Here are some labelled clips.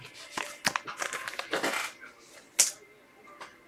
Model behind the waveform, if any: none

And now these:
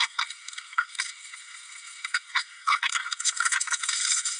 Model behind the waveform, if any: codec, SNAC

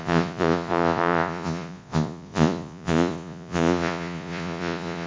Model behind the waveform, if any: vocoder, Vocos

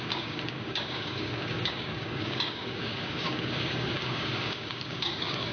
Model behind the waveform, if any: codec, DAC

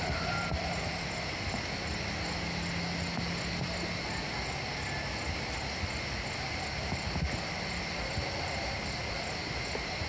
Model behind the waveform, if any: none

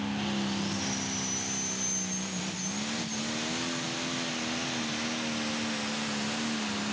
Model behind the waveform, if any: none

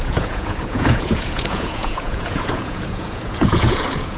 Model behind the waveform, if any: vocoder, Vocos